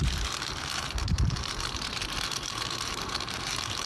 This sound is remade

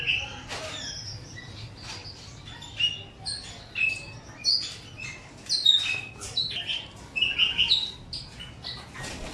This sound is recorded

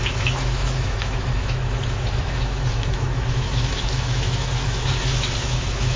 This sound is remade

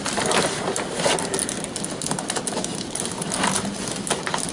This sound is recorded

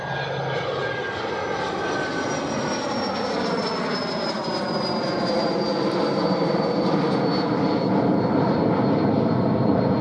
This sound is recorded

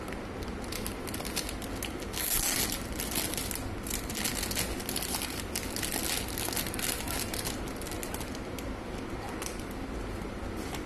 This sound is recorded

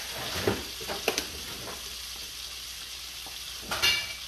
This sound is recorded